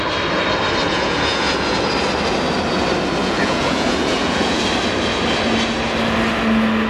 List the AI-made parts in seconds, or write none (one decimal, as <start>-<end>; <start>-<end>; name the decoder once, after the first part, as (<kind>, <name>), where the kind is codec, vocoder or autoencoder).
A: 0.9-1.9 (vocoder, Vocos); 3.2-4.6